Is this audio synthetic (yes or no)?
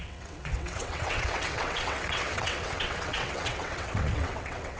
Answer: yes